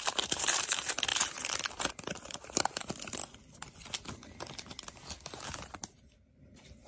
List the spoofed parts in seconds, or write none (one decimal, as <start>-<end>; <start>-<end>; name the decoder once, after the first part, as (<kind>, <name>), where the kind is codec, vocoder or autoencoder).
0.0-1.1 (vocoder, BigVGAN v2); 1.9-3.2; 6.0-6.9